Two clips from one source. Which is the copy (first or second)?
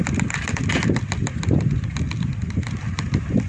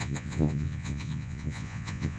second